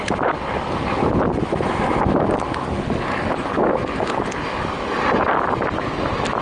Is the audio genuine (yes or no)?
yes